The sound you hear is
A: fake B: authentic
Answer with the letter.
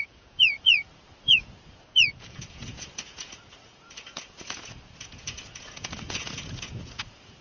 A